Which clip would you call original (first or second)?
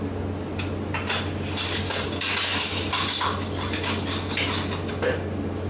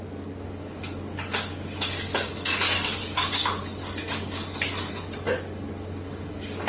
first